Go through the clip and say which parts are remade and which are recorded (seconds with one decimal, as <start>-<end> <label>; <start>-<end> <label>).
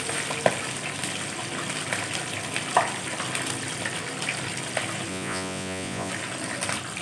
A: 0.0-5.1 recorded; 5.1-6.1 remade; 6.1-7.0 recorded